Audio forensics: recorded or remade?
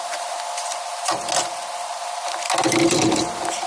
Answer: recorded